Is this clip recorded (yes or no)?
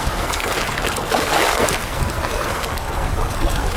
no